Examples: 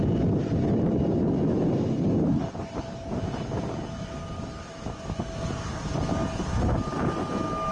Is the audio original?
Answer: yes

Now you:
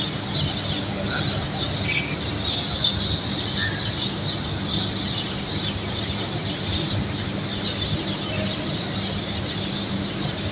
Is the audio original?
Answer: yes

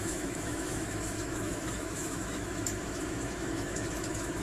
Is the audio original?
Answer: no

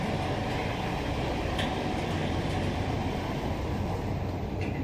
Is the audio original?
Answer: yes